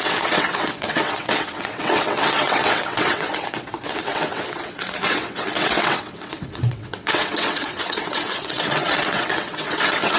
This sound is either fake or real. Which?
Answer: fake